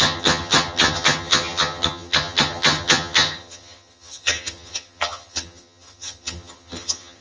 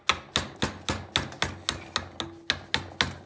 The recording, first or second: second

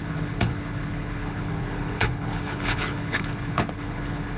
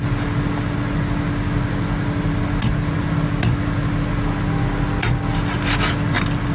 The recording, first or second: second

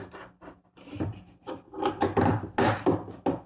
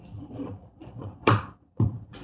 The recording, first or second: first